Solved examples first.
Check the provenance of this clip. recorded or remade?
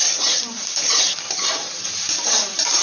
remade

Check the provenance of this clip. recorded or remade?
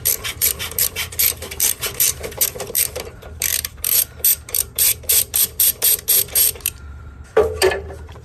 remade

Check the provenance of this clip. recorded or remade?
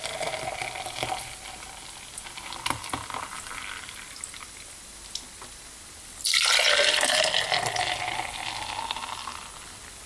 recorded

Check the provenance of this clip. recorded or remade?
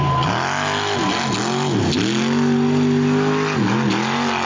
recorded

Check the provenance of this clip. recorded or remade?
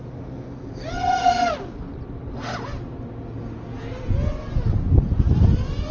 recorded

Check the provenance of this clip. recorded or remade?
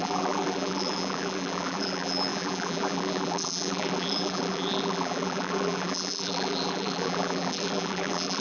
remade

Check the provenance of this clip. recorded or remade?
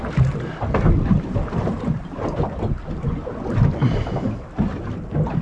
recorded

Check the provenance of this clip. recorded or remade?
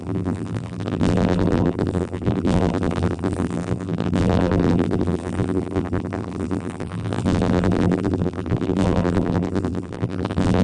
remade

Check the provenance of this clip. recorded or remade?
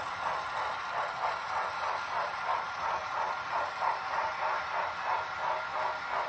recorded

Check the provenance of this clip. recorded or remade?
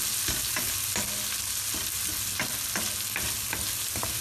recorded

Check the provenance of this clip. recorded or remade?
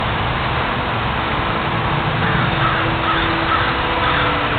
recorded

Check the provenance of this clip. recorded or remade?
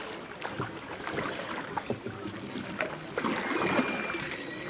recorded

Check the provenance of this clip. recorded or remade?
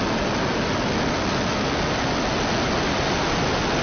recorded